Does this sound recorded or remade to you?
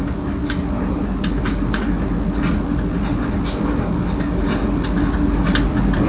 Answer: recorded